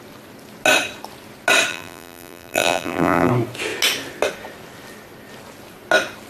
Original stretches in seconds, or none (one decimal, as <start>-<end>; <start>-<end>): 0.0-1.7; 3.3-6.3